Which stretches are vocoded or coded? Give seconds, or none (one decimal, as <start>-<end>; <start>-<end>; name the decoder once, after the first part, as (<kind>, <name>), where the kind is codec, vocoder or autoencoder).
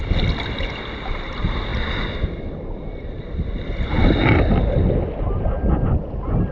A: none